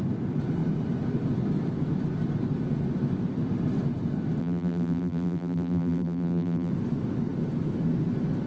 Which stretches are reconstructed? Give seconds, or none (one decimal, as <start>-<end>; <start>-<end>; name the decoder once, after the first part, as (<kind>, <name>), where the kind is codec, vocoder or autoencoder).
4.4-6.7 (vocoder, BigVGAN v2)